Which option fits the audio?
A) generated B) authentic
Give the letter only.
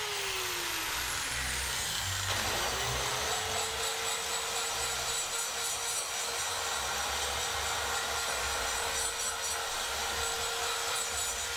B